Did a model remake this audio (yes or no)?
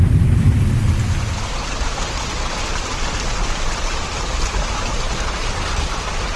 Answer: no